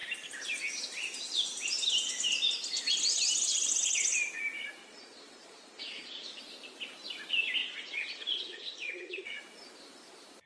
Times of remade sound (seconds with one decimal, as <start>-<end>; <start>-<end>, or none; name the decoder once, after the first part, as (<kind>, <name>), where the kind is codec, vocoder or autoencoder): 4.8-6.4 (vocoder, Vocos); 7.6-9.4